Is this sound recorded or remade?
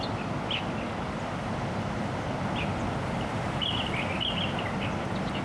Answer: recorded